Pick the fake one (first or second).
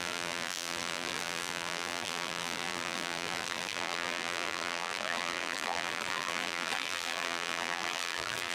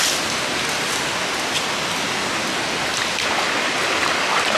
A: first